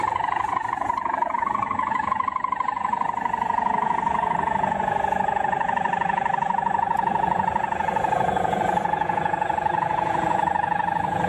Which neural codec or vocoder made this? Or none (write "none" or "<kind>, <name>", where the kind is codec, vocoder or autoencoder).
vocoder, Vocos